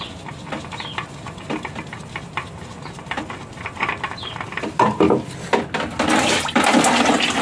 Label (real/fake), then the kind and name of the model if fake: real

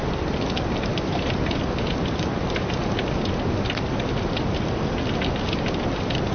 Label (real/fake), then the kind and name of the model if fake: real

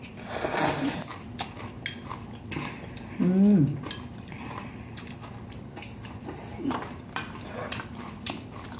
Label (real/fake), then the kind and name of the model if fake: real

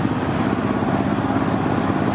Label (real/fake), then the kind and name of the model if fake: real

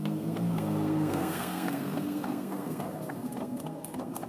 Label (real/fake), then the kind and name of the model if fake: fake, codec, SNAC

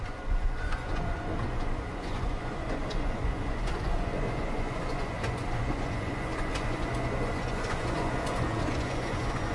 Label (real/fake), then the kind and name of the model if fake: fake, vocoder, Vocos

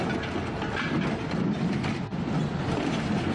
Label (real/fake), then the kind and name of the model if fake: real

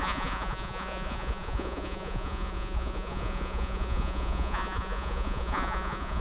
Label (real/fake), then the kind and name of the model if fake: fake, vocoder, Vocos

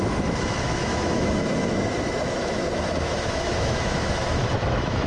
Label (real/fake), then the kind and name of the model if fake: fake, autoencoder, DAC-VAE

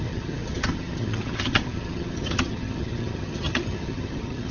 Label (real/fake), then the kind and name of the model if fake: fake, vocoder, HiFi-GAN